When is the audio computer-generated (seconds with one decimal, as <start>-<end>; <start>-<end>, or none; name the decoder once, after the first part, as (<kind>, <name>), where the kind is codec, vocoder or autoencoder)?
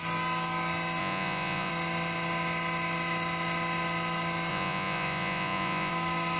1.0-1.7 (vocoder, Vocos); 4.5-5.9